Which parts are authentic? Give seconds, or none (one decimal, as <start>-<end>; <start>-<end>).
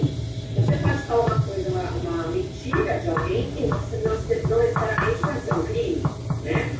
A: 0.0-6.8